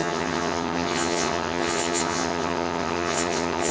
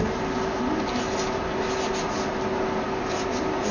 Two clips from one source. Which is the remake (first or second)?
first